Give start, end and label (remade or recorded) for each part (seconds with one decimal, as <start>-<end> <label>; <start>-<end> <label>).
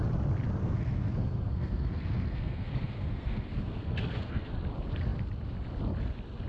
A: 0.0-0.6 recorded; 0.6-4.5 remade; 4.5-6.5 recorded